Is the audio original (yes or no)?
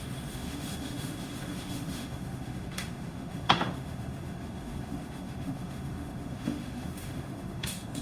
no